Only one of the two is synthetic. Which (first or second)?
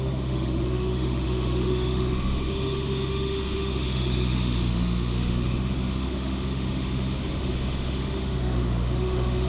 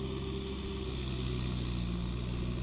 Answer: first